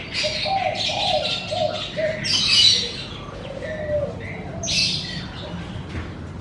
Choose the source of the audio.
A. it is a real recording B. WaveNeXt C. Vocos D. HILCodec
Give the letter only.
A